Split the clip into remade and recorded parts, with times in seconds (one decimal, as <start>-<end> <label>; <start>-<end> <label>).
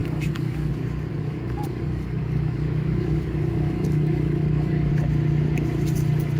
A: 0.0-0.7 remade; 0.7-1.1 recorded; 1.1-4.9 remade; 4.9-6.4 recorded